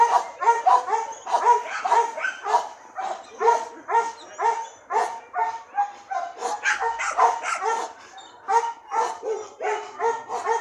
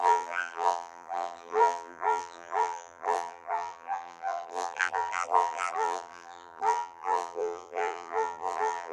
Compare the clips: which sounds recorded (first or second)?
first